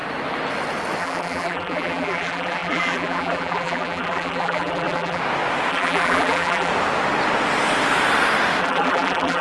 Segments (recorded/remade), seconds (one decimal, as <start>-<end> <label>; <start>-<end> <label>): 0.0-1.0 recorded; 1.0-5.2 remade; 5.2-5.7 recorded; 5.7-6.7 remade; 6.7-8.6 recorded; 8.6-9.4 remade